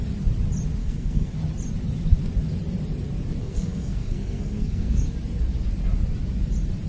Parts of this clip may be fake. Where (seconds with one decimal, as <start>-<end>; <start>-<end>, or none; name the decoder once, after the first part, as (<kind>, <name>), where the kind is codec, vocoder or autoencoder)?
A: 0.8-1.4 (codec, SNAC); 3.4-5.0